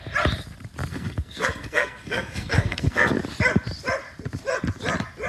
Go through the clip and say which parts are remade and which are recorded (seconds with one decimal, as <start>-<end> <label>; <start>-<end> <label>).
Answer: 0.0-0.9 recorded; 0.9-3.2 remade; 3.2-5.3 recorded